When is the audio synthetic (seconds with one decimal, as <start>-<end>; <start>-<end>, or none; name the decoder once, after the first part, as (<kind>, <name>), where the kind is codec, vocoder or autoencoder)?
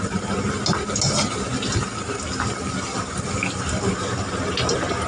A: none